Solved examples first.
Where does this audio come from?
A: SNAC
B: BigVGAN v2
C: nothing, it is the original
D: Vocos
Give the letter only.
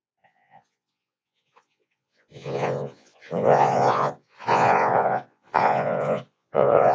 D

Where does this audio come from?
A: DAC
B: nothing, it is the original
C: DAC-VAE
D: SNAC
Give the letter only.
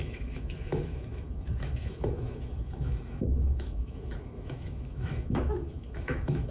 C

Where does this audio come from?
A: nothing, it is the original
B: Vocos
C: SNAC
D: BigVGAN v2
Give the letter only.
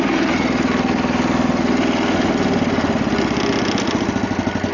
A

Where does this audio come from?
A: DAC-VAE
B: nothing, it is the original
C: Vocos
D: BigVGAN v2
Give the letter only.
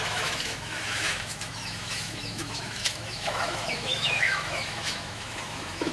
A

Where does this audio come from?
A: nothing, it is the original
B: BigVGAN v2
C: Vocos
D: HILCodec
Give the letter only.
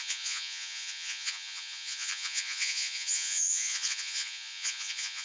C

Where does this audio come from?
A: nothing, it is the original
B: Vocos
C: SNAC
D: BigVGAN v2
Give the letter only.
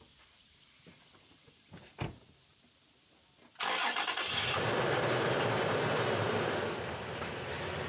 A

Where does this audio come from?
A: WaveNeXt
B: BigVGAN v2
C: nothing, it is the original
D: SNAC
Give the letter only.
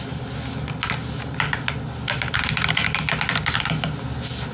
C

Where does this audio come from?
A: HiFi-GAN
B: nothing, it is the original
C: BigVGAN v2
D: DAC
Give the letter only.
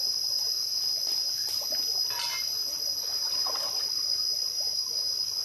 B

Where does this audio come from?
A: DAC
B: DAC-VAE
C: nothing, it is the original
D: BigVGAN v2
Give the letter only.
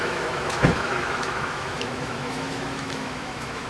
B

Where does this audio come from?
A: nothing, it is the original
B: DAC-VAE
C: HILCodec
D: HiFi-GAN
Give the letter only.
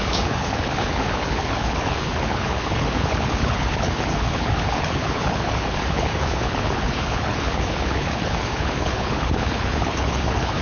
C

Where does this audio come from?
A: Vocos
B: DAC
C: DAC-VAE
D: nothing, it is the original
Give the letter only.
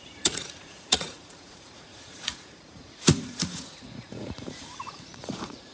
A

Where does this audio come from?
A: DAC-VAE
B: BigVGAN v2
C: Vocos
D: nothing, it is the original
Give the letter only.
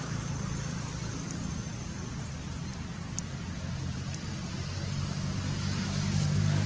D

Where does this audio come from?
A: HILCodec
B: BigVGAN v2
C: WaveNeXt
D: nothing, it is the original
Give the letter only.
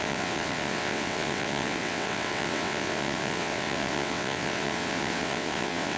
C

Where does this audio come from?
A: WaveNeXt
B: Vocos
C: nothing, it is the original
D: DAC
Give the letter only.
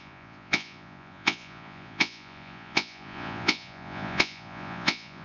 B